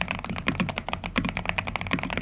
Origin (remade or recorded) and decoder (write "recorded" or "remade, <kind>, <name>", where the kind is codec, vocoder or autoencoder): recorded